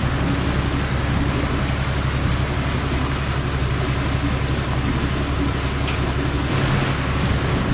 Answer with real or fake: real